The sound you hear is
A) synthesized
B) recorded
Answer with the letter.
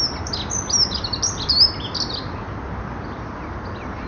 B